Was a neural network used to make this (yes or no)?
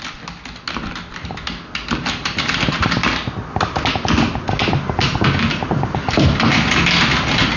no